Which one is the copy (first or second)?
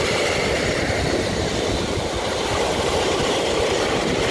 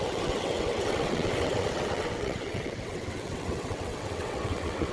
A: second